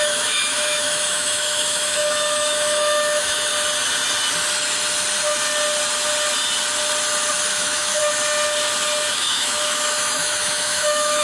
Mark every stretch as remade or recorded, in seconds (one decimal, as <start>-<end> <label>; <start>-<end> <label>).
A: 0.0-3.5 remade; 3.5-7.5 recorded; 7.5-8.0 remade; 8.0-9.1 recorded; 9.1-11.2 remade